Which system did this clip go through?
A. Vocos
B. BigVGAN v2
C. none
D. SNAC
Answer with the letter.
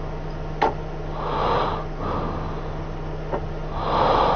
C